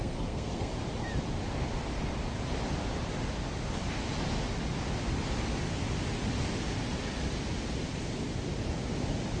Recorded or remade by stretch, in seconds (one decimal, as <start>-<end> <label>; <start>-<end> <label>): 0.0-0.7 remade; 0.7-9.4 recorded